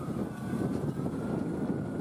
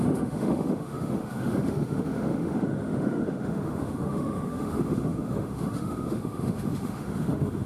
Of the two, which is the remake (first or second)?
second